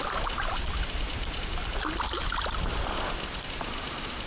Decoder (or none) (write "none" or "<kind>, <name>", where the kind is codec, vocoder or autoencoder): none